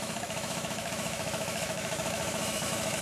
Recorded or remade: remade